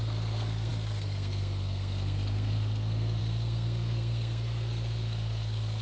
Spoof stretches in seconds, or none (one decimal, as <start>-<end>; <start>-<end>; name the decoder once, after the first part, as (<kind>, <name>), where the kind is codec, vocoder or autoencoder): 0.0-5.8 (codec, SNAC)